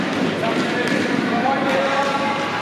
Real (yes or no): yes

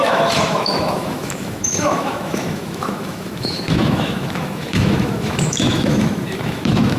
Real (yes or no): no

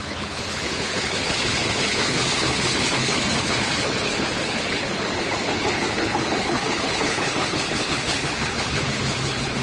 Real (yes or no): no